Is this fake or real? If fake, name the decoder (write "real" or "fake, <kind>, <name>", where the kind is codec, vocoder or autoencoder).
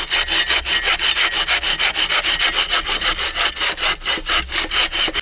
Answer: real